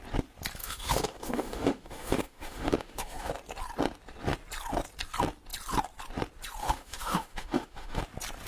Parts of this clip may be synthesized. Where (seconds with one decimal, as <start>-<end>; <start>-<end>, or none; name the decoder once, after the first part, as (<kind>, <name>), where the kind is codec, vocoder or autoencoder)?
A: 0.6-3.3 (autoencoder, DAC-VAE); 6.6-8.0

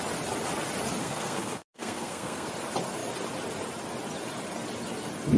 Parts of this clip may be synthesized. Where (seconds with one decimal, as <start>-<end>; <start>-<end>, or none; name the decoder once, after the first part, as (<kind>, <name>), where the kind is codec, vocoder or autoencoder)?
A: 1.0-2.5 (codec, SNAC)

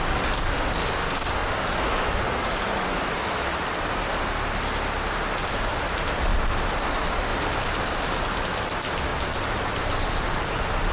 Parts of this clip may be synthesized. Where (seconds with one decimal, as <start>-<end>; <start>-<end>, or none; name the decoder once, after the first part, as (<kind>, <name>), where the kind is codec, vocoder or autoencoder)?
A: 6.3-6.8 (vocoder, BigVGAN v2); 7.3-8.6

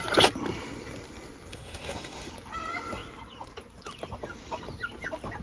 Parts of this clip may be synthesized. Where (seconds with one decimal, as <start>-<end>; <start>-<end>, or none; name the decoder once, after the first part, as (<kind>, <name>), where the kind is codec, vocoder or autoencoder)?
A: 1.5-2.3 (autoencoder, DAC-VAE)

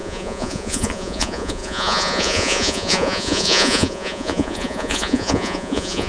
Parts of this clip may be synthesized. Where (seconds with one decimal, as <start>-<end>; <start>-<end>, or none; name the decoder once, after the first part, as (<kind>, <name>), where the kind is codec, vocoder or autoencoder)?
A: 0.0-6.1 (vocoder, Vocos)

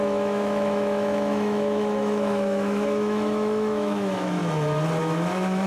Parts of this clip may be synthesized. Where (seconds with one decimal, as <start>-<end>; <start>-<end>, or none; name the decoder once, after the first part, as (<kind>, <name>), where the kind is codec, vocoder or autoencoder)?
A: 0.0-4.4 (autoencoder, DAC-VAE); 5.0-5.7

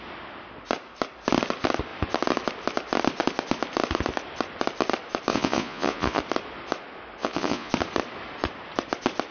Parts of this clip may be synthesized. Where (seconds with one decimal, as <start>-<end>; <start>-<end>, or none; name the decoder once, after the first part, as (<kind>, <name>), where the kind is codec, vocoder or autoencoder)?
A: 5.3-6.2 (vocoder, Vocos); 7.2-7.7

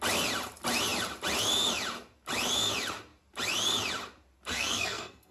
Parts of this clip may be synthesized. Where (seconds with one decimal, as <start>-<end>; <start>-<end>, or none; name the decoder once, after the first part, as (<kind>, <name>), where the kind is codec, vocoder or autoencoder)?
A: 4.5-5.3 (codec, SNAC)